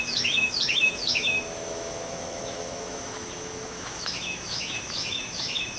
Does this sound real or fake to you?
fake